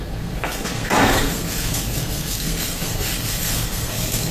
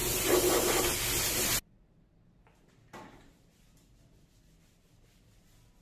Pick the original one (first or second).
second